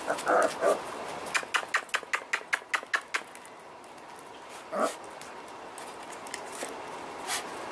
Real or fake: real